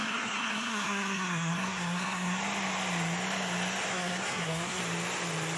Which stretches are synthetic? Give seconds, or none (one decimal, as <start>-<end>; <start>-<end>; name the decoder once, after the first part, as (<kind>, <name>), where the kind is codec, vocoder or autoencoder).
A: 0.0-2.4 (codec, SNAC); 3.9-4.8